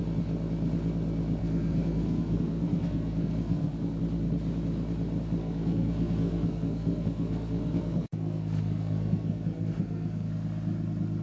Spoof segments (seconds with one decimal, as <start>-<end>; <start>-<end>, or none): 1.4-4.0; 5.4-10.3